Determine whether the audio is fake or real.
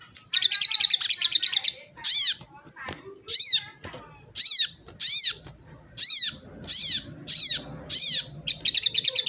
real